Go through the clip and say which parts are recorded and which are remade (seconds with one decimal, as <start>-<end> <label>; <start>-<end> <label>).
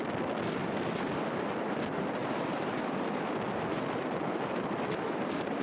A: 0.0-0.6 remade; 0.6-1.6 recorded; 1.6-5.6 remade